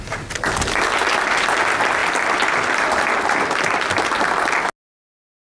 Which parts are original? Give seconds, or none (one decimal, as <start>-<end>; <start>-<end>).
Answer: 0.0-5.5